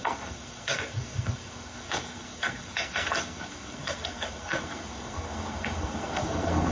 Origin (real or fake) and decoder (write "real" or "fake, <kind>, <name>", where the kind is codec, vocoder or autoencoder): fake, codec, SNAC